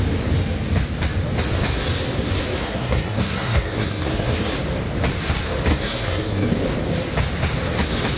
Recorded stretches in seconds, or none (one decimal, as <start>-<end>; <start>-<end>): 0.0-2.6; 4.5-5.7; 6.5-8.2